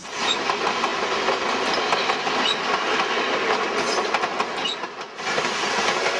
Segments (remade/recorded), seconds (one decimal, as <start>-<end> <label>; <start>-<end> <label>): 0.0-6.2 recorded